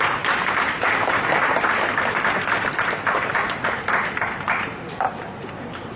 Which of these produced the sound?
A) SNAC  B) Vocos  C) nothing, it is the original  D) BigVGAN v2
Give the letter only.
D